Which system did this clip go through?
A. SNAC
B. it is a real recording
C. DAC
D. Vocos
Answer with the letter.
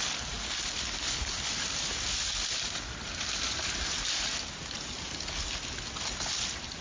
B